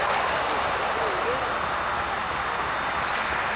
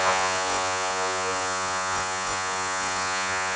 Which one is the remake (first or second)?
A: second